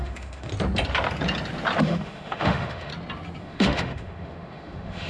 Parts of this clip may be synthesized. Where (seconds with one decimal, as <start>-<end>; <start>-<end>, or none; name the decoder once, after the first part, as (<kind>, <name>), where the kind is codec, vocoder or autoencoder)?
0.0-0.5 (autoencoder, DAC-VAE); 1.8-2.9; 3.4-5.1